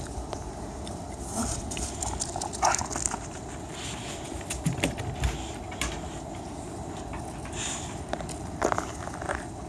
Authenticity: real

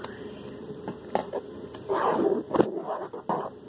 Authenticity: fake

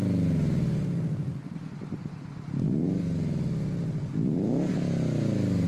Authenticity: real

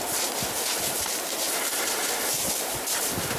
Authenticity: real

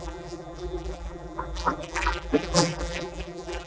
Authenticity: fake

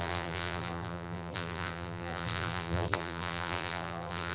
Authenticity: fake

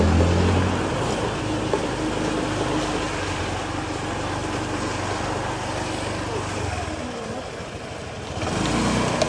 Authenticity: real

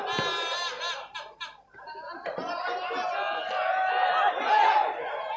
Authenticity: fake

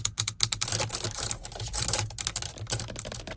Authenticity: fake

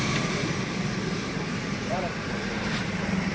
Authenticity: fake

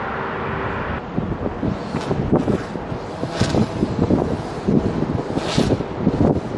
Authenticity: real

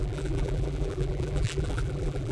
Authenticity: fake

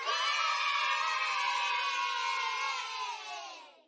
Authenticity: real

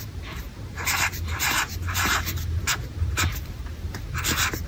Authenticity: fake